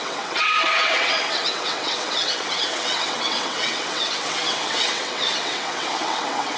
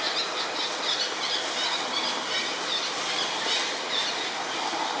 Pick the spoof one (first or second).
first